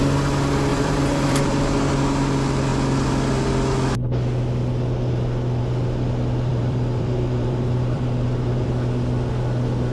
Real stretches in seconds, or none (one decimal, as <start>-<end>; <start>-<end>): 0.0-0.7; 1.8-6.5; 8.7-9.9